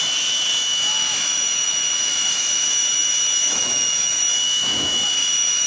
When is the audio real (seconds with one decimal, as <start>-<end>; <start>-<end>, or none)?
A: none